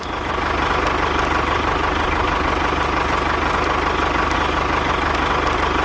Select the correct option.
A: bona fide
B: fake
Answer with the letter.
A